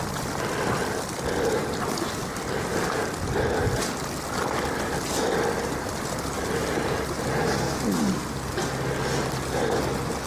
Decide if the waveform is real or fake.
real